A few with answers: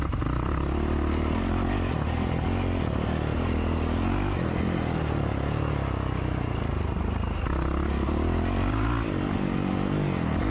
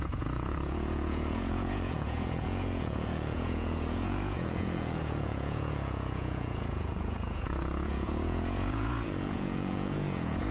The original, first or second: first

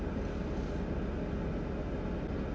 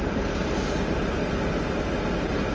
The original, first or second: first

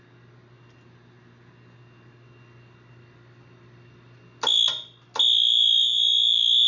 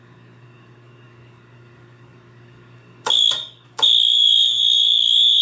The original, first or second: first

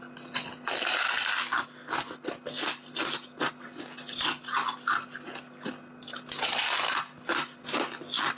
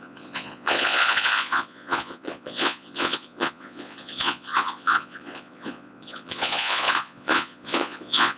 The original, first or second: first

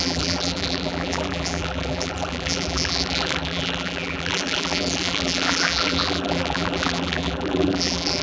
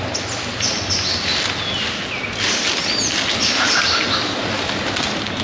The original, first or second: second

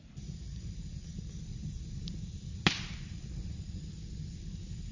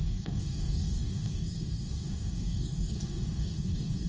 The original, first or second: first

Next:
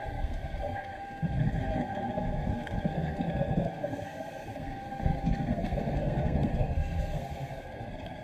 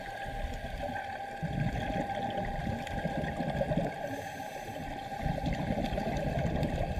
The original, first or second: second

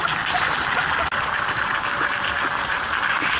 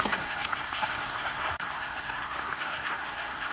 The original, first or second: first